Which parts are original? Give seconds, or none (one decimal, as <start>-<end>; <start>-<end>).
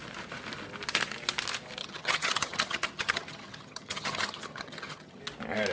0.0-1.8; 5.2-5.7